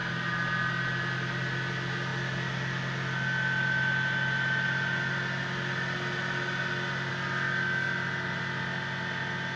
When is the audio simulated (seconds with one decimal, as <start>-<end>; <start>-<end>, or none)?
none